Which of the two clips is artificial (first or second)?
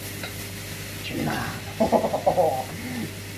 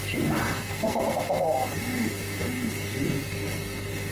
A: second